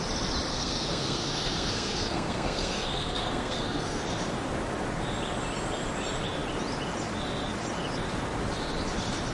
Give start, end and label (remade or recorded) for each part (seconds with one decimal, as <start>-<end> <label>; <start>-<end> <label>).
0.0-0.5 recorded; 0.5-4.0 remade; 4.0-9.3 recorded